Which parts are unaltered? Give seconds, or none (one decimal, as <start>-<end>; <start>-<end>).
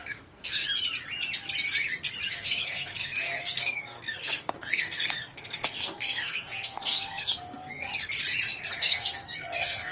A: 0.6-2.3; 7.9-8.8